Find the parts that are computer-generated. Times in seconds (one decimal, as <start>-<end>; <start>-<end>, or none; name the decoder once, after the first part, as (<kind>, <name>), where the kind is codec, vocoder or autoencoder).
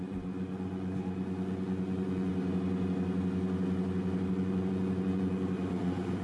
0.0-2.3 (vocoder, Vocos); 4.3-6.2